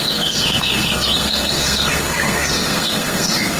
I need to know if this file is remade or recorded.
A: remade